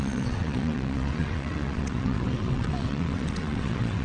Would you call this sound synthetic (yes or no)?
yes